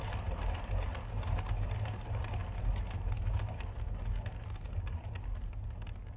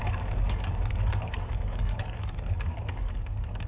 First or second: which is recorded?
first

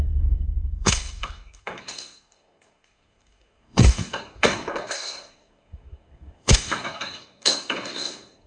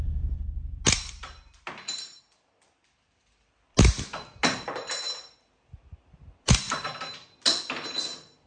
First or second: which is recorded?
second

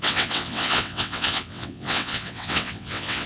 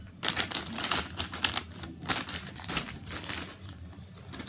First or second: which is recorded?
second